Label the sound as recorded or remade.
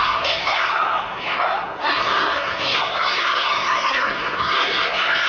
remade